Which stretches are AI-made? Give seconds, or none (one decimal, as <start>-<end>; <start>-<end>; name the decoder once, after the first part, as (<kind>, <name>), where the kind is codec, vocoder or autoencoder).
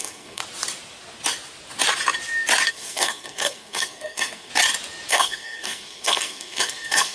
0.0-0.4 (codec, SNAC); 2.7-4.5; 5.1-7.1